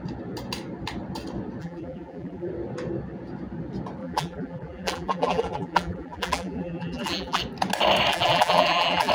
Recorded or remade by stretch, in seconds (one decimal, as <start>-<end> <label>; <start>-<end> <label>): 0.0-1.6 recorded; 1.6-2.5 remade; 2.5-4.0 recorded; 4.0-7.4 remade; 7.4-8.1 recorded; 8.1-9.1 remade